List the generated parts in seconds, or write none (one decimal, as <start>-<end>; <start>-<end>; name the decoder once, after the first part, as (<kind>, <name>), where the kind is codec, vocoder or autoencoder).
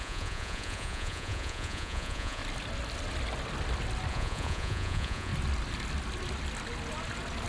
0.0-2.4 (vocoder, Vocos); 4.1-5.3